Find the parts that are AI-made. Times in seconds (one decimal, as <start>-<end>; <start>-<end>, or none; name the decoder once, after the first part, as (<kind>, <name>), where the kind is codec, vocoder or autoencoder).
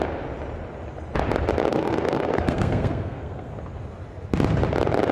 1.7-3.5 (codec, SNAC)